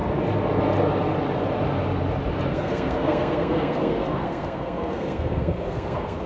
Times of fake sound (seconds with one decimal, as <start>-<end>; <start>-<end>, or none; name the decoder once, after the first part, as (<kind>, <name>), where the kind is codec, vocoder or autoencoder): 2.5-6.3 (codec, SNAC)